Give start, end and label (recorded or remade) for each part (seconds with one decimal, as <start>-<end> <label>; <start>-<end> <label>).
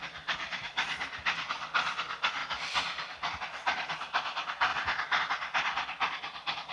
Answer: 0.0-6.7 recorded